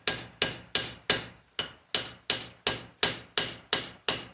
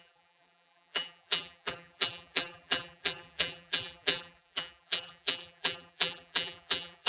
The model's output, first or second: second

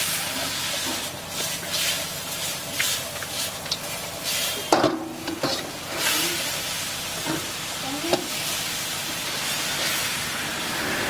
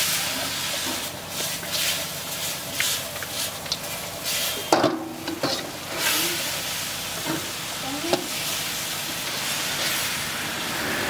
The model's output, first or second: first